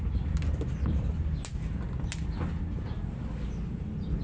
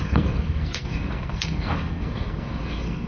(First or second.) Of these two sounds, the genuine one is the first